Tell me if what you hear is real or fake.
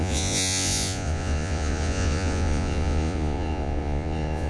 fake